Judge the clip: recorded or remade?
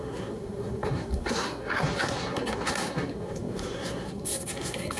remade